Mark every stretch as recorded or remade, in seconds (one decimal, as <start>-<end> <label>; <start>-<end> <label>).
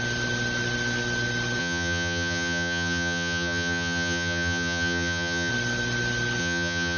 0.0-1.6 recorded; 1.6-5.5 remade; 5.5-6.4 recorded; 6.4-7.0 remade